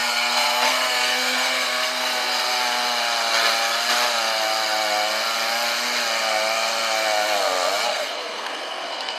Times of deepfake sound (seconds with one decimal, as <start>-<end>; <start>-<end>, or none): 0.0-2.6; 7.9-9.2

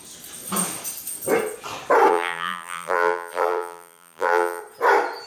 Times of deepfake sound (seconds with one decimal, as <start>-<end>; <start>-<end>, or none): 2.1-4.6

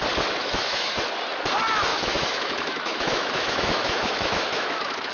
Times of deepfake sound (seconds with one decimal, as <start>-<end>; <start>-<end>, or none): 0.4-1.0; 1.9-5.1

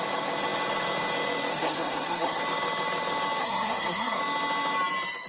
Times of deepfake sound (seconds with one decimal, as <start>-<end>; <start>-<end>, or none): 1.5-2.4; 3.4-4.2

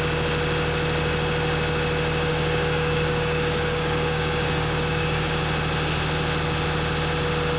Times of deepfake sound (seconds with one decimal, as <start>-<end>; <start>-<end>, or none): 2.3-5.4

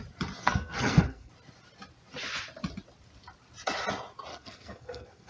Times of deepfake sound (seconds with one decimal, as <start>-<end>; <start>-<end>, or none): 0.4-1.3; 4.3-5.3